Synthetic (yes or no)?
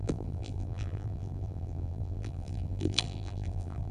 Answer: yes